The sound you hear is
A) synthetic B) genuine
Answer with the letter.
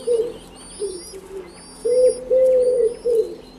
B